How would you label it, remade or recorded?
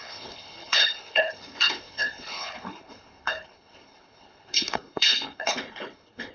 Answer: remade